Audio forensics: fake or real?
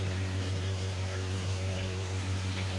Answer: fake